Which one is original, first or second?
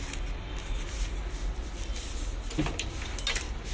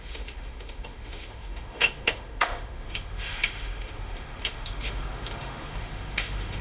first